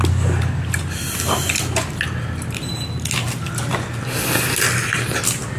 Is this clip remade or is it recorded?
recorded